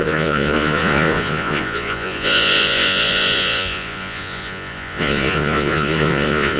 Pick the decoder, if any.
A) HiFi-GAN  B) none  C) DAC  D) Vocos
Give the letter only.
D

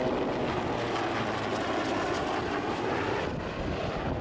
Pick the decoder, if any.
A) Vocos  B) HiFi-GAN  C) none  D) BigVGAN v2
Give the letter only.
C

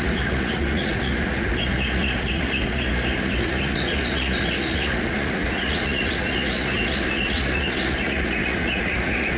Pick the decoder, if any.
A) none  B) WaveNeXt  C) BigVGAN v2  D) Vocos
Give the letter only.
D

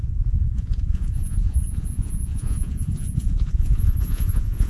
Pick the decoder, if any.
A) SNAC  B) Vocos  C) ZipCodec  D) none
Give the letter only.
B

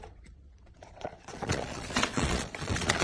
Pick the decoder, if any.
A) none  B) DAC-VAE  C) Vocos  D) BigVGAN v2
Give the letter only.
C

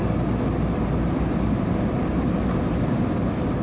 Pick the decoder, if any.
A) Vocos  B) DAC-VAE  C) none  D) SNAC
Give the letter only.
C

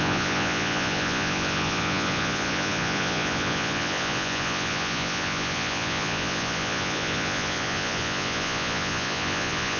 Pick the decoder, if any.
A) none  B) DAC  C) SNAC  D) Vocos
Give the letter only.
D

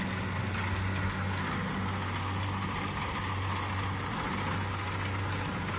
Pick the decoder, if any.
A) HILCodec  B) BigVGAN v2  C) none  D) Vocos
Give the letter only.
C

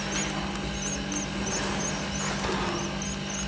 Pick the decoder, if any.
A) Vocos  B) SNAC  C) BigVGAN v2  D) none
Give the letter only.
D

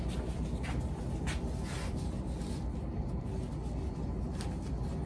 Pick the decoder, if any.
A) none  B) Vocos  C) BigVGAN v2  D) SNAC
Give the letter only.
A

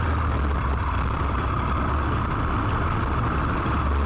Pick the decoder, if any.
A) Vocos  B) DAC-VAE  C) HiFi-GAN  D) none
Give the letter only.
D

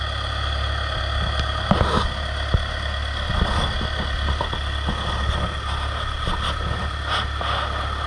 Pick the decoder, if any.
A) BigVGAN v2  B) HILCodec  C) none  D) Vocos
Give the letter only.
C